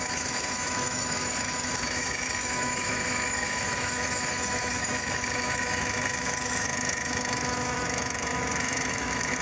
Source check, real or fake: fake